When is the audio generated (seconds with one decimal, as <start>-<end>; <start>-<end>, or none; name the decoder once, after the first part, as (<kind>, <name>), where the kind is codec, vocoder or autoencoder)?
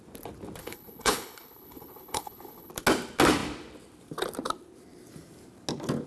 0.6-2.7 (codec, HILCodec)